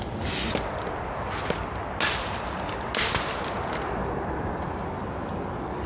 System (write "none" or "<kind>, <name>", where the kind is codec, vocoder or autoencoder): none